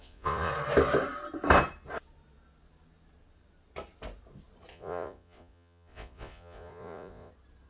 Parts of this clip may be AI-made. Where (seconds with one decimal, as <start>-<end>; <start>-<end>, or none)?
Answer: 0.0-0.5; 4.7-7.3